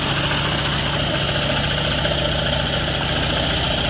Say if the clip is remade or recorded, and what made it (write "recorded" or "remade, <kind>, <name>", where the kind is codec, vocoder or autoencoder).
recorded